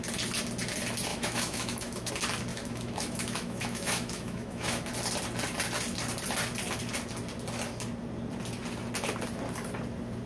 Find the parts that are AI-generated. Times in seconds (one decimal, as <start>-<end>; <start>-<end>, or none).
1.1-2.1; 2.5-4.9

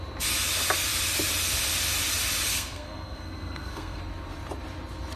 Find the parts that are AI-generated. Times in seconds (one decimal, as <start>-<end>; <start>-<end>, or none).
2.5-4.0

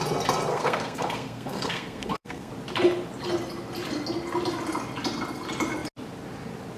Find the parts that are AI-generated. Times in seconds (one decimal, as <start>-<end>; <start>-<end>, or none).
0.5-2.5

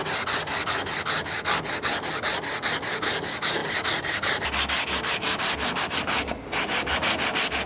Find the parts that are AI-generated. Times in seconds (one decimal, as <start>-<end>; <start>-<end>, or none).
none

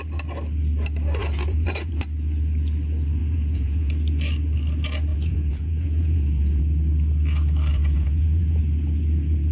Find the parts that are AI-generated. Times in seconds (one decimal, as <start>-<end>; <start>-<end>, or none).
1.2-1.9; 3.2-3.9; 5.1-6.6; 7.7-8.6

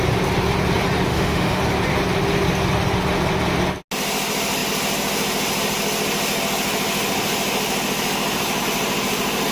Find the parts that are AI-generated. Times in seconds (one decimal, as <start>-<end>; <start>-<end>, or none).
1.1-1.6